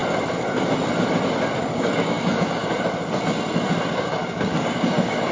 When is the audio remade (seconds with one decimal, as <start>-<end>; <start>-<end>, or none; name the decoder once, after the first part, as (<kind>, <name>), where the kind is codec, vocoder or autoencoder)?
1.6-2.6 (codec, DAC); 3.9-5.3